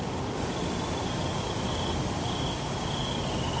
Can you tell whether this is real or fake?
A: real